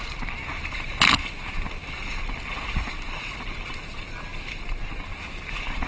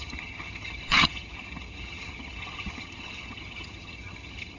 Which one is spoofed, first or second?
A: second